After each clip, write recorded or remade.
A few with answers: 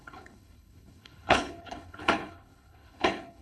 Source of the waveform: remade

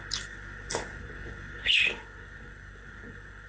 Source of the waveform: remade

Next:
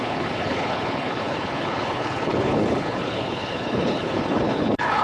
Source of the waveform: remade